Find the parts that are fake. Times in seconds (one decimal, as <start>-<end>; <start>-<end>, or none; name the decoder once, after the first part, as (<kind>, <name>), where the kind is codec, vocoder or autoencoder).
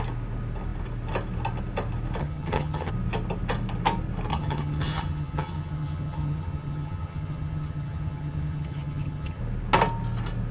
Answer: 2.2-2.9 (vocoder, HiFi-GAN); 4.3-9.4